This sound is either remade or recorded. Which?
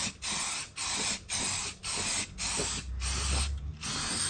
recorded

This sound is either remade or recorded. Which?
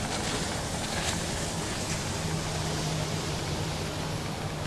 recorded